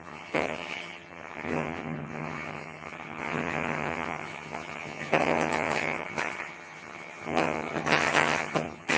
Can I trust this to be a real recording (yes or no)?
no